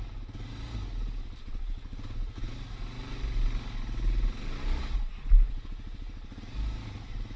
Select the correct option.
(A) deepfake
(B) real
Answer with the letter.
B